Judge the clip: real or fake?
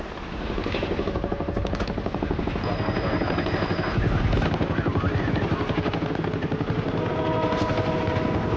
real